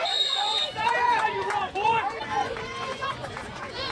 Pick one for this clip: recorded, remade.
remade